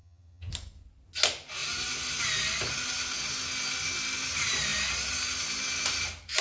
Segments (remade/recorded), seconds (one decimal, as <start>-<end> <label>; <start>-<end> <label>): 0.0-0.5 remade; 0.5-6.4 recorded